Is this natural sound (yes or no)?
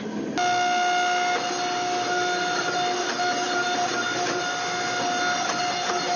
yes